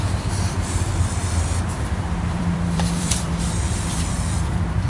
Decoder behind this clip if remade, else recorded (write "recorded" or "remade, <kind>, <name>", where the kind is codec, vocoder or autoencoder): remade, vocoder, BigVGAN v2